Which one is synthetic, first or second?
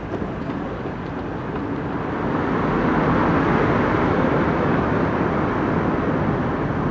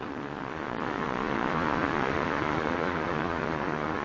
second